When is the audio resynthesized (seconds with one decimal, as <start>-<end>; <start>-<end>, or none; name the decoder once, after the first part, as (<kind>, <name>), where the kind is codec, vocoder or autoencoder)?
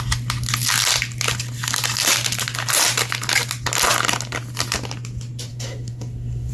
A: 5.5-6.5 (codec, SNAC)